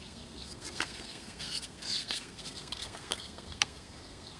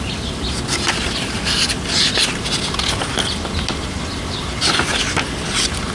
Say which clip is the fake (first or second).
first